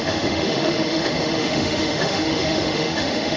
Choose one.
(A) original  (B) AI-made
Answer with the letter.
B